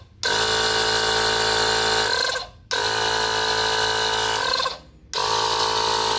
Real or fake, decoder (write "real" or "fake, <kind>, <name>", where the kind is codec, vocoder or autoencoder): real